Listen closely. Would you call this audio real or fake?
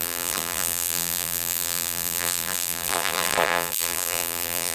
fake